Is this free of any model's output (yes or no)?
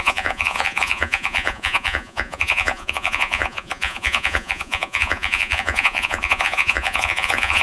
no